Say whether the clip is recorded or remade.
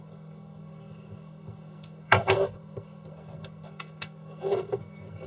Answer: remade